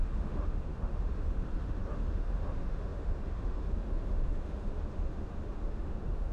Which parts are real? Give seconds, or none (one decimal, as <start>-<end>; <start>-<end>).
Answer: none